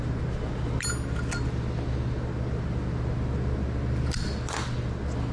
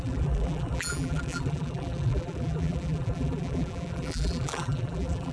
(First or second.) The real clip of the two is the first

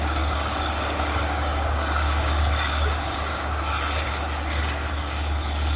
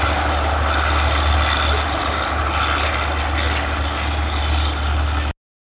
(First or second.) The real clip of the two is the second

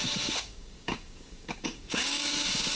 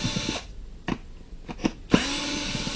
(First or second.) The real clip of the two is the second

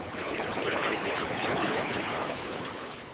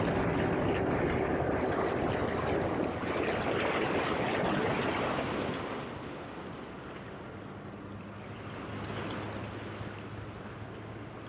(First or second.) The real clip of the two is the second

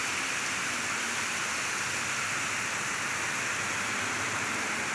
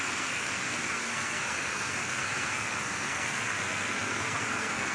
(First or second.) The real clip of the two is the first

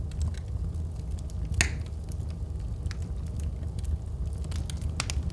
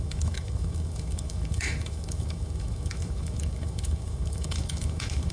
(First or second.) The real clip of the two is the first